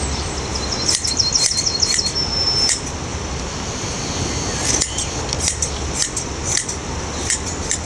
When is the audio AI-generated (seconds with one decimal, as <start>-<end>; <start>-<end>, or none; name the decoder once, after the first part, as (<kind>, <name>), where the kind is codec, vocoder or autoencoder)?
none